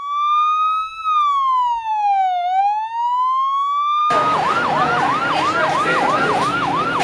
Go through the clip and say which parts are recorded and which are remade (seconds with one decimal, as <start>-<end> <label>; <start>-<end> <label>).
0.0-7.0 recorded